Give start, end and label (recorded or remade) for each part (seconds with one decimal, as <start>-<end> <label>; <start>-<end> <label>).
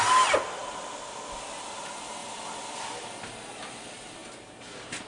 0.0-2.2 recorded; 2.2-3.3 remade; 3.3-5.1 recorded